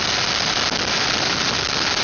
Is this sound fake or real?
real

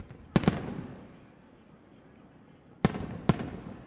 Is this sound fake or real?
real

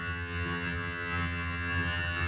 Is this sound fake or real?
fake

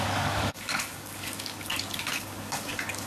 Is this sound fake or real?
fake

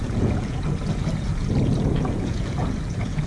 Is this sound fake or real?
fake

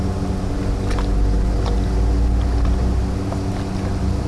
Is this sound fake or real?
real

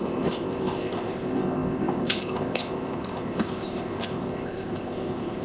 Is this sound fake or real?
fake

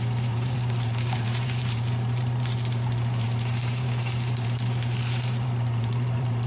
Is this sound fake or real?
fake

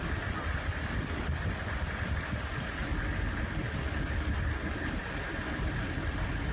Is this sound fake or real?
fake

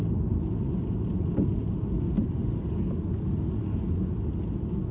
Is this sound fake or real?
real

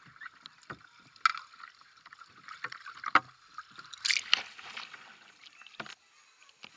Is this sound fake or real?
real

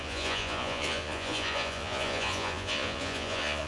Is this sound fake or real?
fake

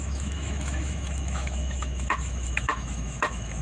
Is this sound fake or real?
fake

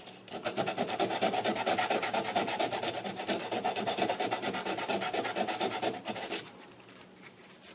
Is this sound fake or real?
real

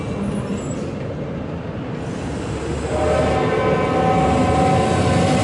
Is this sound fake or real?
real